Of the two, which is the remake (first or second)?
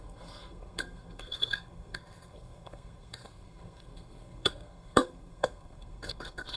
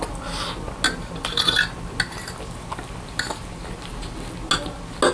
first